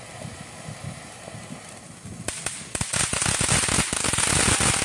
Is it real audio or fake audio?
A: real